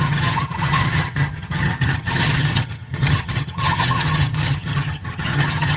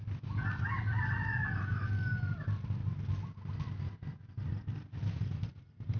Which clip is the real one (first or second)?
second